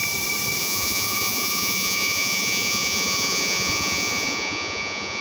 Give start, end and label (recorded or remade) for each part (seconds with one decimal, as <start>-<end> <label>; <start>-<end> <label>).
0.0-0.6 recorded; 0.6-5.2 remade